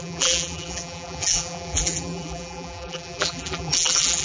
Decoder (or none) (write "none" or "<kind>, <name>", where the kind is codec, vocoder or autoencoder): vocoder, BigVGAN v2